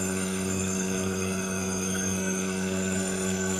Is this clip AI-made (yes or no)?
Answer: yes